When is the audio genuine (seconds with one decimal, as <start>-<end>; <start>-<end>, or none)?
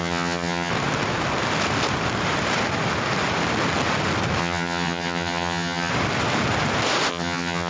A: 0.7-4.4; 5.9-7.1